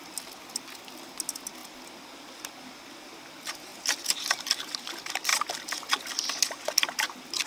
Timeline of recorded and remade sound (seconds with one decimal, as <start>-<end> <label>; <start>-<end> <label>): 0.0-7.5 recorded